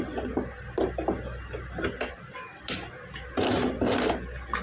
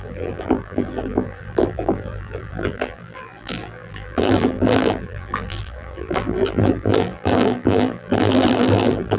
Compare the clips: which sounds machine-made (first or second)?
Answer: second